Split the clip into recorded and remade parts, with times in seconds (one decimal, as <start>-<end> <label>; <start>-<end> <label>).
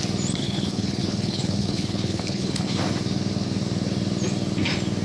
0.0-0.4 recorded; 0.4-2.8 remade; 2.8-5.0 recorded